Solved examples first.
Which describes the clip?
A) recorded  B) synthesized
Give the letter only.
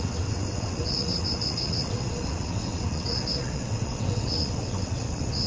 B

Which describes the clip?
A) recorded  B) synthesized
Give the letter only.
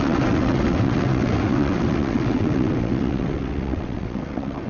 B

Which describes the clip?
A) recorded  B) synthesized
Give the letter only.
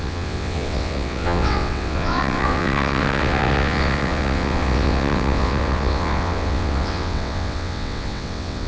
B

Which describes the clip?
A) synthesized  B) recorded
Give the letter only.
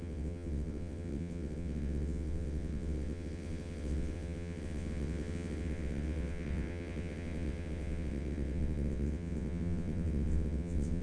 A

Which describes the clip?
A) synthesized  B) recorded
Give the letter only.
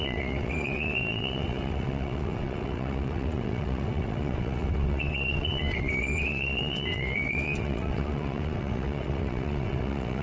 A